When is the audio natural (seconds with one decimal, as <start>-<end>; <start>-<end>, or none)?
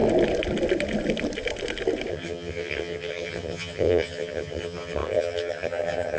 0.0-2.1